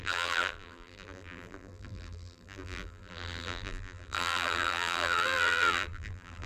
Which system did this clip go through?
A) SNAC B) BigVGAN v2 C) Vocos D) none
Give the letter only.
B